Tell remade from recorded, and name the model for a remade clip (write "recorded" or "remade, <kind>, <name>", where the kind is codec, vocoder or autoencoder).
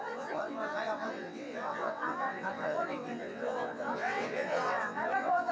remade, vocoder, WaveNeXt